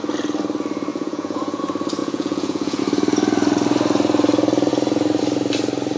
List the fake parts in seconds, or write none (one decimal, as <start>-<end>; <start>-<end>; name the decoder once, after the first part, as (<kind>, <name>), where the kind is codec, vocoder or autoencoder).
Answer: 0.9-1.6 (vocoder, Vocos); 2.0-2.8